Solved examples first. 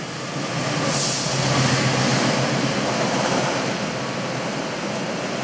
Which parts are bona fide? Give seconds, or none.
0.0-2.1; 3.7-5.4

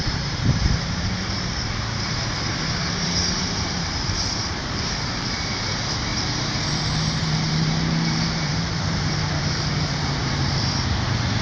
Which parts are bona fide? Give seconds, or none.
none

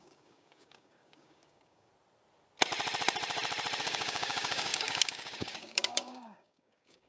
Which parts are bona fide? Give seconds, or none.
1.9-3.8